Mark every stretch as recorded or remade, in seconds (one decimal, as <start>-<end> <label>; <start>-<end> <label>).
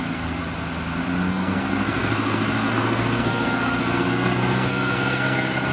0.0-0.4 remade; 0.4-1.3 recorded; 1.3-5.7 remade